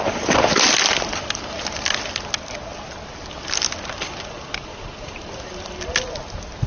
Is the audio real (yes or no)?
yes